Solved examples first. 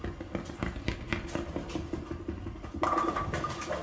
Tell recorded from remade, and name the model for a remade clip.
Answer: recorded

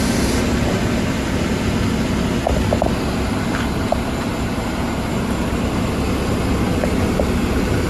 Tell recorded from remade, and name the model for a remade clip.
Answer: recorded